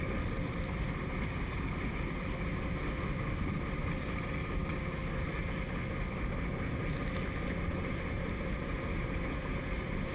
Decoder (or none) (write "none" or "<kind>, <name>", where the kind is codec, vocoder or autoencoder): none